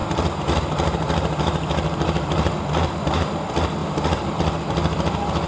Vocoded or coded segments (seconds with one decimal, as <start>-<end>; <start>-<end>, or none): 0.0-3.3; 3.8-4.4